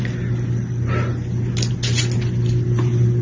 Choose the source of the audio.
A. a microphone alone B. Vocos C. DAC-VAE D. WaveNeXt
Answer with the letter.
A